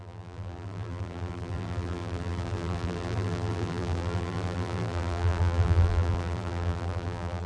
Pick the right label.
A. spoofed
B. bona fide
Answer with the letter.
A